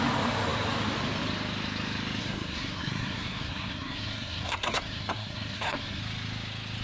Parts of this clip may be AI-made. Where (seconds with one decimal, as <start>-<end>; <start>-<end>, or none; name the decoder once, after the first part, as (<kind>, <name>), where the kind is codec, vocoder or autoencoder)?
2.2-6.0 (codec, SNAC)